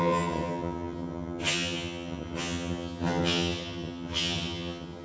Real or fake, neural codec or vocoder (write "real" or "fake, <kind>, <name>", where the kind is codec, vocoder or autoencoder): fake, vocoder, HiFi-GAN